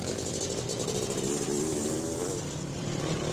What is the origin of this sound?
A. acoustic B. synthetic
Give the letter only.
A